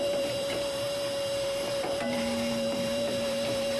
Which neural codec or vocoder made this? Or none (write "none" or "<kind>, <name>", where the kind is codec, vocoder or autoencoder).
vocoder, BigVGAN v2